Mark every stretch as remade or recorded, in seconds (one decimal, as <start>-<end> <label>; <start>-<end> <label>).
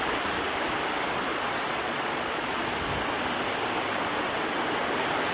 0.0-1.3 recorded; 1.3-2.7 remade; 2.7-5.3 recorded